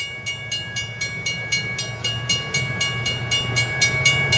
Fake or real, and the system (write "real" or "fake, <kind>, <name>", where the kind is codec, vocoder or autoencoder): real